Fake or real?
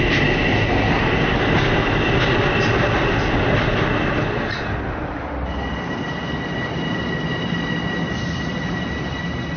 real